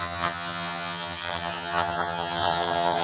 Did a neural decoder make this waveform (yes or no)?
yes